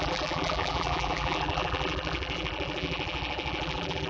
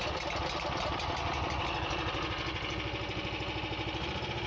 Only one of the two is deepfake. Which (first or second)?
first